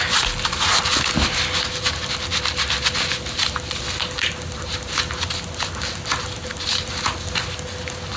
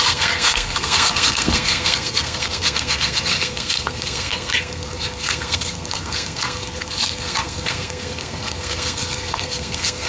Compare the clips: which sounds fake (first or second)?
second